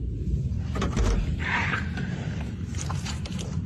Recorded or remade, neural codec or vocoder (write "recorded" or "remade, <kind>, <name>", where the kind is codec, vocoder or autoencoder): remade, vocoder, BigVGAN v2